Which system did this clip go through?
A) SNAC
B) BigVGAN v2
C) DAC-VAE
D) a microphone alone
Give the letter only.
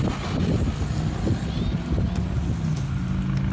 D